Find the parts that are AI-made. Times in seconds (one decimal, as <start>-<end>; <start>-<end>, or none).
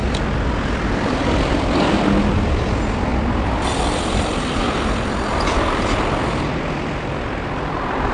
0.9-8.1